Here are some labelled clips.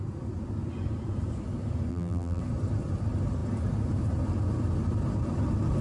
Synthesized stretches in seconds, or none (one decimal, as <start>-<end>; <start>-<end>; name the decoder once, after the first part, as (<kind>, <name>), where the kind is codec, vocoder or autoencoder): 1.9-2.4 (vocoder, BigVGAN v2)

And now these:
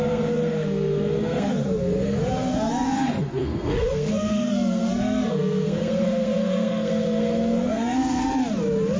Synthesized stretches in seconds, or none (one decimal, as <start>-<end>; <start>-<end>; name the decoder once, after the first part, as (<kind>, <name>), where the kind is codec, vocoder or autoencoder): 0.0-8.3 (codec, SNAC)

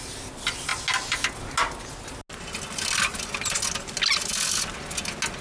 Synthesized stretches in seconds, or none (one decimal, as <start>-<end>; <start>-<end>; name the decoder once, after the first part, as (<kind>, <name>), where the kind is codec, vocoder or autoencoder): none

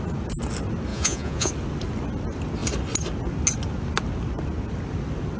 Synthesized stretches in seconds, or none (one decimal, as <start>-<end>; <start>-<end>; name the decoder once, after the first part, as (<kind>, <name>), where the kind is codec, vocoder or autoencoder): 0.9-1.5 (vocoder, Vocos)